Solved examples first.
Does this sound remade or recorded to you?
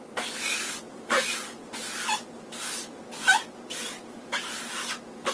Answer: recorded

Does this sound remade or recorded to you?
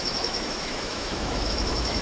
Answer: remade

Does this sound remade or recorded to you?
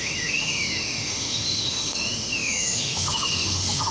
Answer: remade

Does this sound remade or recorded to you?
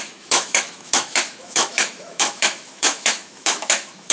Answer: remade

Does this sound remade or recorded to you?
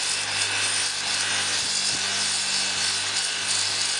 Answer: recorded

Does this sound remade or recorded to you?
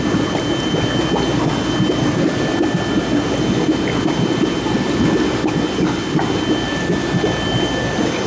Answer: recorded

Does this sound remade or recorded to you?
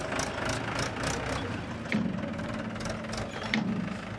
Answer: recorded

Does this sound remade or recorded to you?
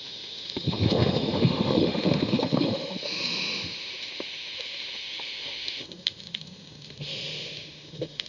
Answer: remade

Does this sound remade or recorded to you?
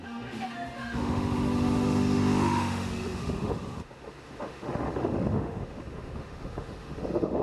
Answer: remade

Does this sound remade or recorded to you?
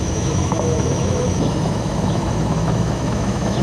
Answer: remade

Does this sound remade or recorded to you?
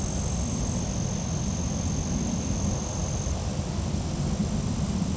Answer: recorded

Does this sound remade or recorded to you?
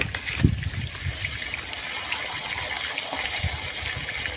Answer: recorded